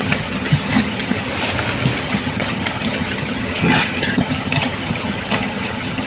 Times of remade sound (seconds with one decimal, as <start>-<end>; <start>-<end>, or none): 0.0-1.3; 2.0-6.1